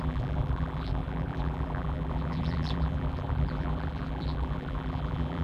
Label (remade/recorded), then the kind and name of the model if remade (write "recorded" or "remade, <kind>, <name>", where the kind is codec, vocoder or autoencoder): remade, vocoder, BigVGAN v2